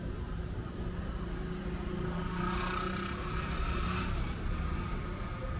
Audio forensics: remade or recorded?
recorded